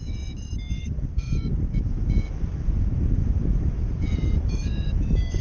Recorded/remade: remade